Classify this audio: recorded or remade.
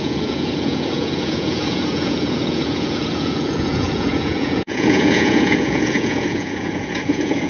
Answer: remade